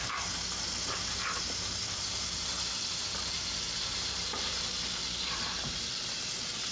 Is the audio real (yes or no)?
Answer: no